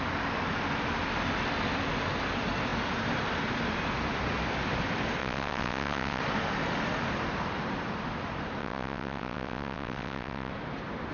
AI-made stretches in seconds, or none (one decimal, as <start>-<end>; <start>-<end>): 5.2-6.2; 8.6-10.5